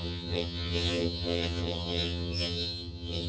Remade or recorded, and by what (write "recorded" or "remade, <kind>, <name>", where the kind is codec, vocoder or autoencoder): remade, vocoder, HiFi-GAN